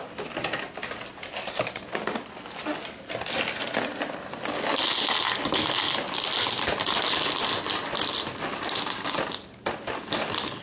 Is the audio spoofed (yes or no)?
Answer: no